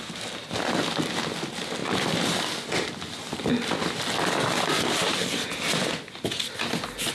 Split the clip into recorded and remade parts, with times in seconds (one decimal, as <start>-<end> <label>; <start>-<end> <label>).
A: 0.0-7.1 recorded